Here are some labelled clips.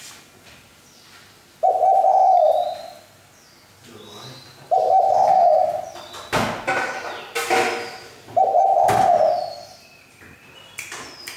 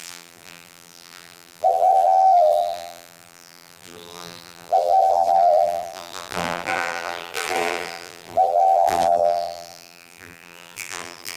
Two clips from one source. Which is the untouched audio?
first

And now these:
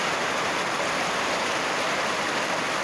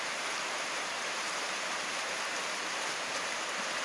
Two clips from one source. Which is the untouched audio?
first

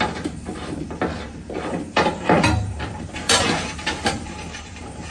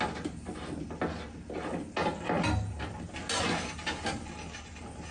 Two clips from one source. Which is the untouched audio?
second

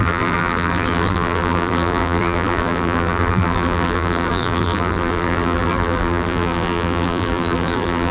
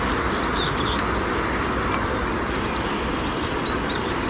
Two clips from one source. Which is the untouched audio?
second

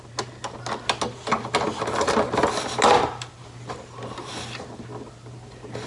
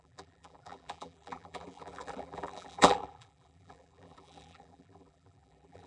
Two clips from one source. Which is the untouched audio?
first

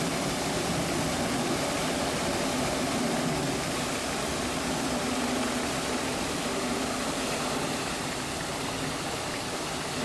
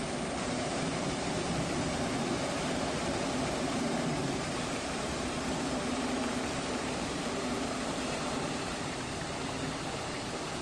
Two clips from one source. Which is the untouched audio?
first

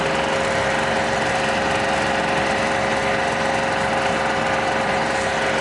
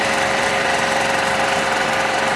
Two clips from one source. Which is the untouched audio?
first